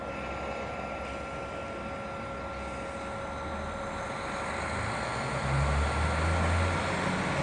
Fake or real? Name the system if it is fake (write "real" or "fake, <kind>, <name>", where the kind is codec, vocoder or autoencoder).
real